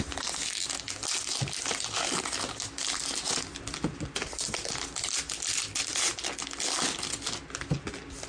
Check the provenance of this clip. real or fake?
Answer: real